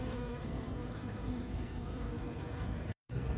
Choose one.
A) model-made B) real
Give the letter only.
A